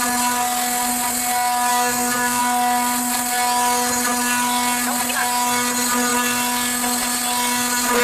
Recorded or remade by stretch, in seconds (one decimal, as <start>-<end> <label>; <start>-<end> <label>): 0.0-1.7 recorded; 1.7-2.4 remade; 2.4-8.0 recorded